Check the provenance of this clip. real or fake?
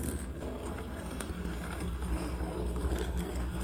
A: fake